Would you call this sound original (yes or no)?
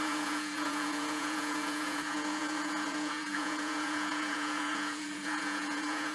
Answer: no